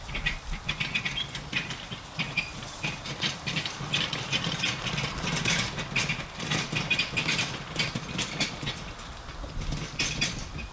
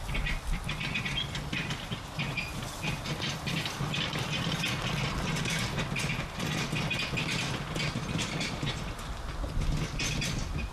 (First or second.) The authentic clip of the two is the second